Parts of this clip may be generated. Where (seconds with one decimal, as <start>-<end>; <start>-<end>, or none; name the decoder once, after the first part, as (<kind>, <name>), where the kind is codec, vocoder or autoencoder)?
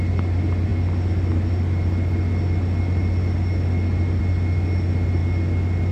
none